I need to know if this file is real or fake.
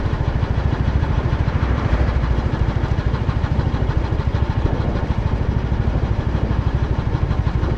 fake